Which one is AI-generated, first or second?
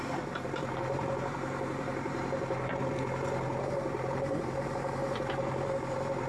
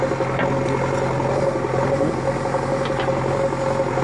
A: first